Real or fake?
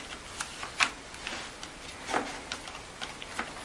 real